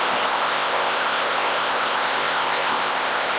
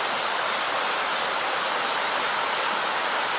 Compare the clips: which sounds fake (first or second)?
first